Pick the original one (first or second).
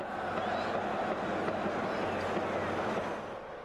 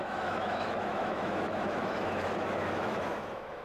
first